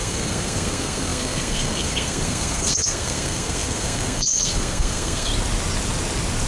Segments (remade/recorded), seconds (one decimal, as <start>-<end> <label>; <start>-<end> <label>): 0.0-5.3 remade; 5.3-6.5 recorded